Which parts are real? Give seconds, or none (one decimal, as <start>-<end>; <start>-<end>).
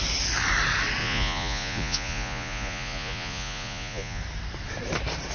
0.0-1.0; 4.2-5.3